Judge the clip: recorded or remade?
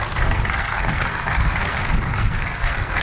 remade